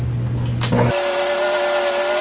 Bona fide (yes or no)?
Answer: yes